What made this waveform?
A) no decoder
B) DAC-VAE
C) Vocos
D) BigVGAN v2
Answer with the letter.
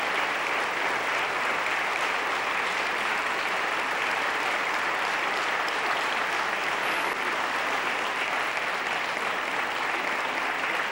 D